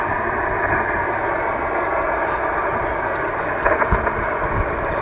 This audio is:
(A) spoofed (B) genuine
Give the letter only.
B